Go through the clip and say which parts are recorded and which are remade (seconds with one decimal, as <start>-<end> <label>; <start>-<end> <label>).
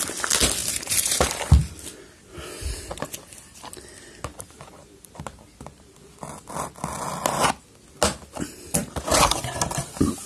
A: 0.0-0.6 recorded; 0.6-1.3 remade; 1.3-10.3 recorded